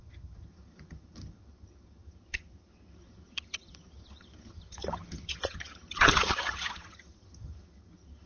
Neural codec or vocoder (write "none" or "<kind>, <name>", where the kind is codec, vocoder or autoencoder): vocoder, HiFi-GAN